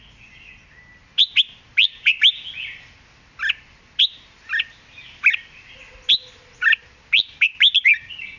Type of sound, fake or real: real